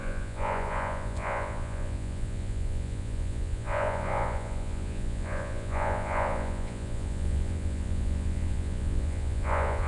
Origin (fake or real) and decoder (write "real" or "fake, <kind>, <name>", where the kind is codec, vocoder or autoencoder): fake, vocoder, Vocos